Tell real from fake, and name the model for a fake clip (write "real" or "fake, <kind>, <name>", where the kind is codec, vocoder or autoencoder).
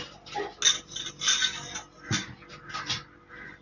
real